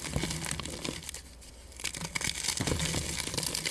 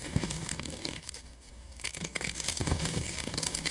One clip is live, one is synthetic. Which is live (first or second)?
first